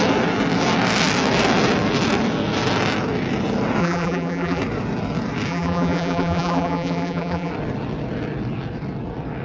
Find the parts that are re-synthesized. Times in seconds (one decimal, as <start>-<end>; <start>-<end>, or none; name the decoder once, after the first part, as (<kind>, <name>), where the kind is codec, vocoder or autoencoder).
3.8-4.6 (vocoder, BigVGAN v2); 5.5-7.5